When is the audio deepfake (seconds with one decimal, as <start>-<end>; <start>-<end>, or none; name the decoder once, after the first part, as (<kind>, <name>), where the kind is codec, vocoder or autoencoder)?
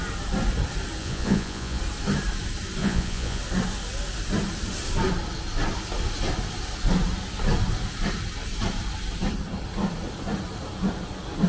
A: 1.0-1.8 (vocoder, Vocos); 2.8-3.4